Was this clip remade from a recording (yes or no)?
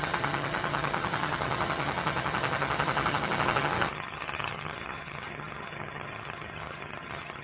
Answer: yes